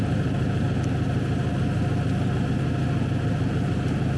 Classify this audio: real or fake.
real